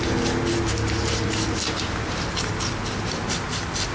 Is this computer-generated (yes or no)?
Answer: no